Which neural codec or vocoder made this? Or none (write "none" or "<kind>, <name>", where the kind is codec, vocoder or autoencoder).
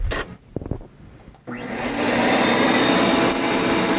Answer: vocoder, BigVGAN v2